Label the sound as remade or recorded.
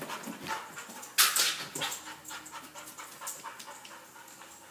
recorded